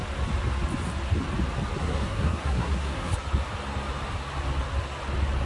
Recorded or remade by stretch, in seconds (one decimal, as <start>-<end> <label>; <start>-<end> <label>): 0.0-1.8 recorded; 1.8-3.1 remade; 3.1-5.5 recorded